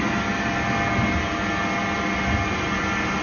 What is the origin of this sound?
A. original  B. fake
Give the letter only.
A